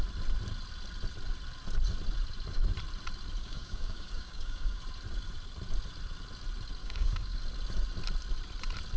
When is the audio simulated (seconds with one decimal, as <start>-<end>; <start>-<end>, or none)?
3.4-4.8; 6.8-7.4